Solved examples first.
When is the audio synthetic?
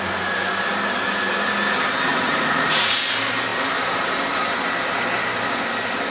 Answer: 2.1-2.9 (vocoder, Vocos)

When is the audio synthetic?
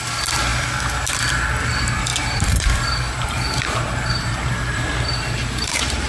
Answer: 2.1-6.1 (vocoder, BigVGAN v2)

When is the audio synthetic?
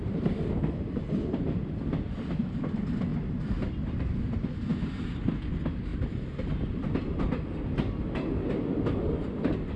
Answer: none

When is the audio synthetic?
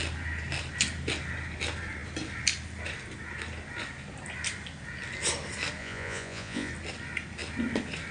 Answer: 5.8-6.7 (vocoder, Vocos)